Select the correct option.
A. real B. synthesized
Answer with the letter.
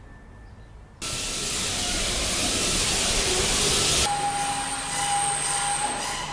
A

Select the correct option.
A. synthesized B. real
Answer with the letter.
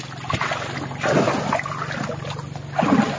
B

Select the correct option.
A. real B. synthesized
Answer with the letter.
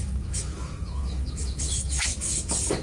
B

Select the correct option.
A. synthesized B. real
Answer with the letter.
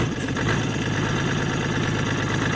B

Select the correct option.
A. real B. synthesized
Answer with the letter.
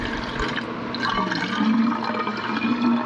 A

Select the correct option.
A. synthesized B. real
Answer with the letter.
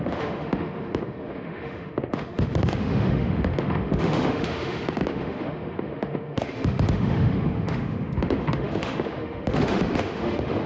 A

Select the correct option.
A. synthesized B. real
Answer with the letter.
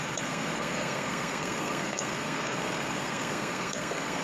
A